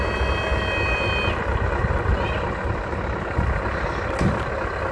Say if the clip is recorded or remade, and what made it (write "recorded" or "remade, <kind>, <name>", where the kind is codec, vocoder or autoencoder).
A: recorded